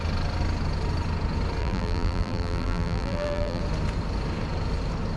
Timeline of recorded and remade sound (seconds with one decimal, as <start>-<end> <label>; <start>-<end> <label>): 0.0-1.6 recorded; 1.6-3.6 remade; 3.6-5.2 recorded